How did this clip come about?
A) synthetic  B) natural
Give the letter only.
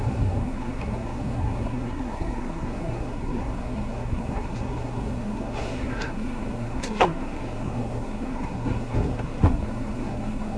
A